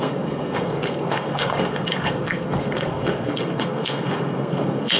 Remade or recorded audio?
remade